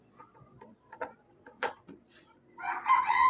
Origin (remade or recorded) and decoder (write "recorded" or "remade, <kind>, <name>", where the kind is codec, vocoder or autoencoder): remade, vocoder, Vocos